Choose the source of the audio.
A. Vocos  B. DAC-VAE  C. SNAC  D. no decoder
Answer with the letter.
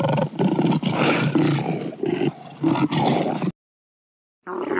D